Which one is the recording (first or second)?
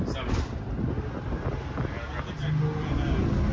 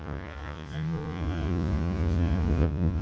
first